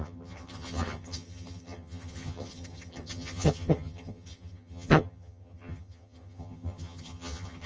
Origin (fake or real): fake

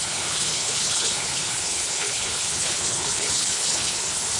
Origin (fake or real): fake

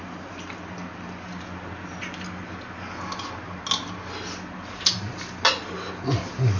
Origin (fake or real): real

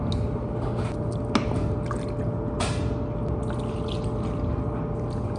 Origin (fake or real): real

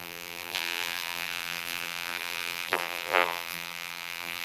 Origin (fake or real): fake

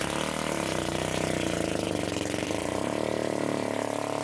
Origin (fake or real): fake